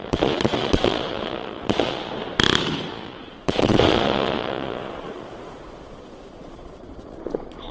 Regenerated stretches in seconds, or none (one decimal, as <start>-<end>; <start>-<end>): 0.0-2.1; 2.9-7.7